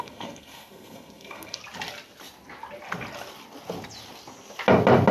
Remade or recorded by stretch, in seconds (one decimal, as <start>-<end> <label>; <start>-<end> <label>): 0.0-1.6 remade; 1.6-5.1 recorded